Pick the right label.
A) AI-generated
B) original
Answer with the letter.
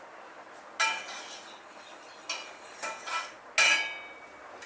B